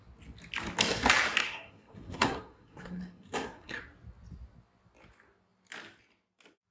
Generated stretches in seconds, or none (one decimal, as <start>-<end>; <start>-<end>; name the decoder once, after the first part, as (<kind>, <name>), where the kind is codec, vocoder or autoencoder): 1.4-3.8 (codec, SNAC)

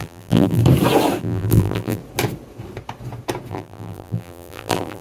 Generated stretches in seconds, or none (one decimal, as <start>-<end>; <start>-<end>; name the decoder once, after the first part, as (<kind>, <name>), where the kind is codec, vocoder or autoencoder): 0.0-0.6 (vocoder, BigVGAN v2); 1.2-2.0; 3.5-5.0

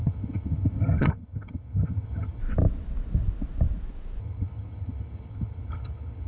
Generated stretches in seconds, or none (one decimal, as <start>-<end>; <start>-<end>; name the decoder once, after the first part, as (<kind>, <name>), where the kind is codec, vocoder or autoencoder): 0.0-2.4 (vocoder, HiFi-GAN); 4.2-6.3

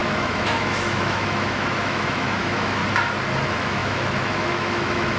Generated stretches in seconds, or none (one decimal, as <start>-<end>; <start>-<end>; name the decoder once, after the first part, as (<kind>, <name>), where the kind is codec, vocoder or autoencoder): 0.0-2.8 (autoencoder, DAC-VAE); 3.4-5.2

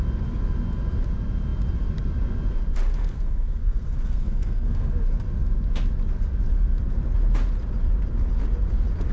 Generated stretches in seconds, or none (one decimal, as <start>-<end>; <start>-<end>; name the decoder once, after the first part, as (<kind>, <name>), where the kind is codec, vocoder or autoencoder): 3.0-4.9 (codec, SNAC)